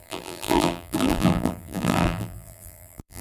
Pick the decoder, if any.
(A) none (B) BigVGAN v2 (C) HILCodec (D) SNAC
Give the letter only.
B